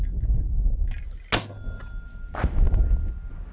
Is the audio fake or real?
real